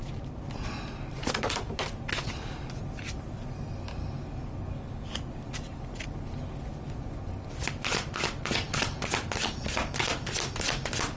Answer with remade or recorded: recorded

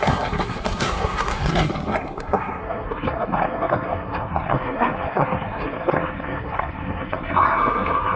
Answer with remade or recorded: remade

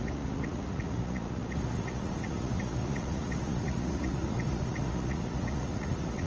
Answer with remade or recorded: remade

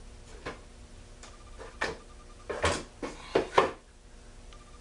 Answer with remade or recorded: recorded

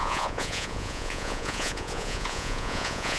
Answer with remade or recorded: remade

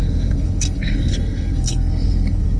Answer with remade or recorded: remade